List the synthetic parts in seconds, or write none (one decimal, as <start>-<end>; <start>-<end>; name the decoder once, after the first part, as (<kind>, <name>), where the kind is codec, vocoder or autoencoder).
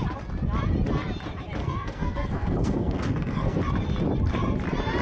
1.6-3.6 (codec, SNAC)